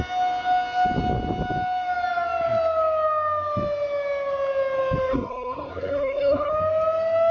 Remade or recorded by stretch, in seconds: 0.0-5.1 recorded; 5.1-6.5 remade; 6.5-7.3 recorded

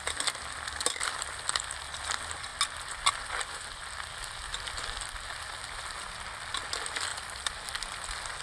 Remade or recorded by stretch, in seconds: 0.0-8.4 recorded

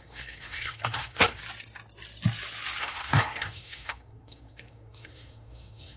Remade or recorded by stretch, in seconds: 0.0-1.4 remade; 1.4-2.8 recorded; 2.8-6.0 remade

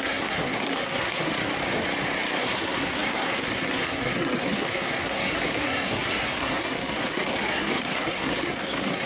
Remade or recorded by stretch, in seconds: 0.0-1.3 remade; 1.3-2.4 recorded; 2.4-9.1 remade

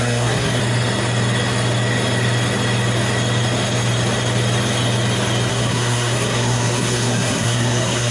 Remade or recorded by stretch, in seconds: 0.0-0.6 remade; 0.6-5.5 recorded; 5.5-8.1 remade

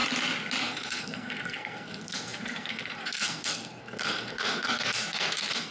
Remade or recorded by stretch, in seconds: 0.0-0.6 recorded; 0.6-5.7 remade

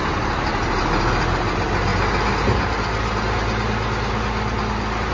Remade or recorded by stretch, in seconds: 0.0-5.1 recorded

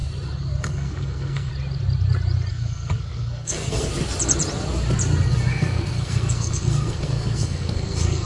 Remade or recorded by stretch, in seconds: 0.0-0.6 recorded; 0.6-1.5 remade; 1.5-2.5 recorded; 2.5-3.9 remade; 3.9-5.5 recorded; 5.5-8.3 remade